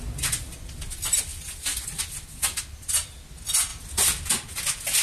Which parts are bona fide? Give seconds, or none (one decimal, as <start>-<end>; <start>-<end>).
0.0-5.0